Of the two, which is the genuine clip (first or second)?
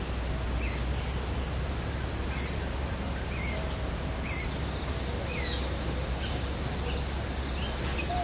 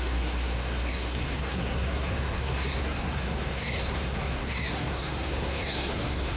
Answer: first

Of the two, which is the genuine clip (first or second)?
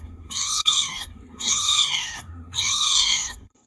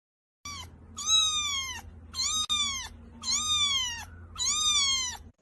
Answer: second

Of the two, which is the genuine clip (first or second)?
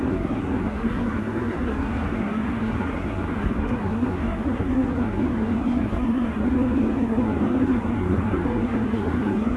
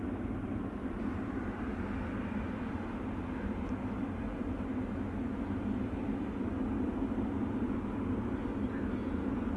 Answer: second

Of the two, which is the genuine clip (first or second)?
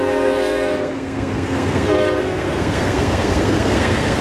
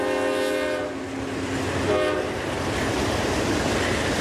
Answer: second